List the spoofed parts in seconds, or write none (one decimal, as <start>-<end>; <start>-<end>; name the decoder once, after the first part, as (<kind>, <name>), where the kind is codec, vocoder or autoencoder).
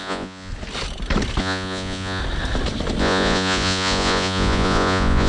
0.0-0.5 (vocoder, Vocos); 1.4-2.2; 3.0-5.3